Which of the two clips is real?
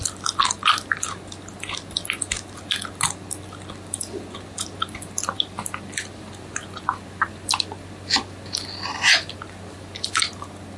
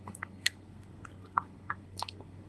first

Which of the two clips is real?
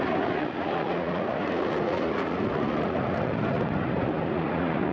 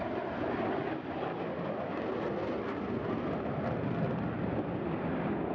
second